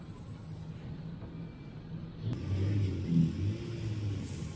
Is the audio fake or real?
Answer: real